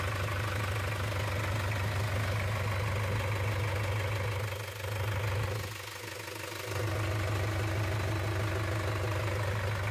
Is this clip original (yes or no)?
yes